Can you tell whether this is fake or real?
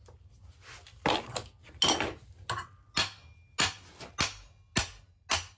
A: real